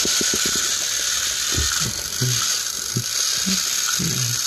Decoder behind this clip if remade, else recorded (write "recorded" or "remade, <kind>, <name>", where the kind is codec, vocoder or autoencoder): recorded